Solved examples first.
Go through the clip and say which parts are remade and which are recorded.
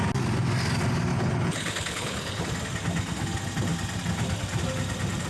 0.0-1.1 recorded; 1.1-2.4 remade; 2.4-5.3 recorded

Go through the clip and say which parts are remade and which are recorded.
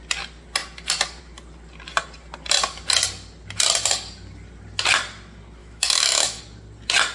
0.0-5.6 recorded; 5.6-6.4 remade; 6.4-7.1 recorded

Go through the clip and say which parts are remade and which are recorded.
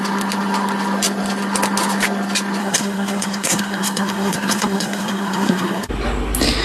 0.0-2.6 recorded; 2.6-5.9 remade; 5.9-6.6 recorded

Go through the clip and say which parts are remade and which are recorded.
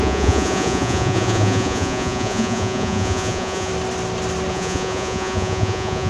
0.0-3.7 remade; 3.7-4.5 recorded; 4.5-6.1 remade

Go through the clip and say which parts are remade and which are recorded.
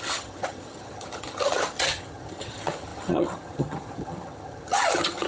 0.0-5.3 remade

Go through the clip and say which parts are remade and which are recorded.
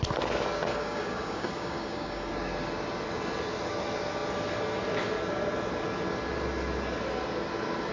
0.0-0.7 recorded; 0.7-2.3 remade; 2.3-7.9 recorded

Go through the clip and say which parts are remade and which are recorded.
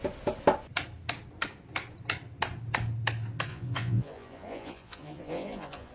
0.0-3.5 recorded; 3.5-5.9 remade